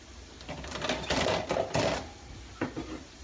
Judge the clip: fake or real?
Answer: real